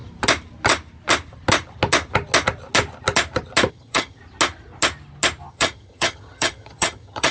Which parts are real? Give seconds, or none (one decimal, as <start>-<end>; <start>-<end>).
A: 0.0-3.7; 4.2-5.5